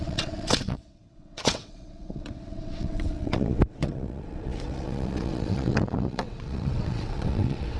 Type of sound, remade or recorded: remade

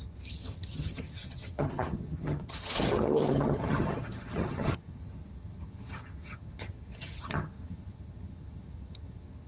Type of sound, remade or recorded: remade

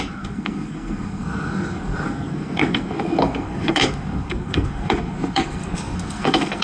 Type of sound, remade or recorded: remade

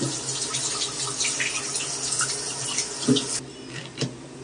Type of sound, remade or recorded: recorded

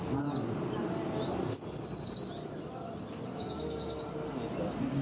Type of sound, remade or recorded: recorded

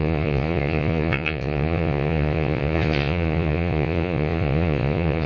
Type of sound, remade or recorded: remade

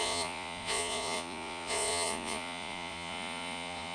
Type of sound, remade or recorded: remade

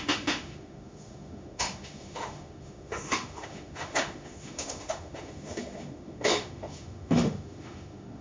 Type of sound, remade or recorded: remade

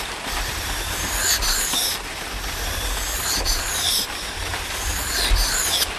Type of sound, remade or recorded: remade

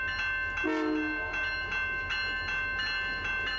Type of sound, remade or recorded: recorded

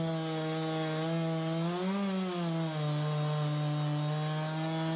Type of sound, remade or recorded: recorded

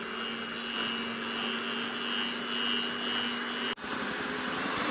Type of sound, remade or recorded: recorded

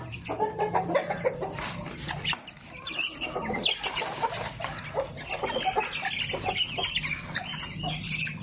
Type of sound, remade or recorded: recorded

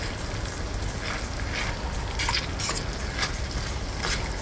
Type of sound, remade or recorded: recorded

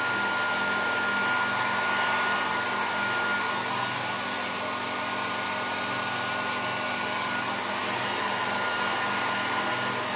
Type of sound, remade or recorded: recorded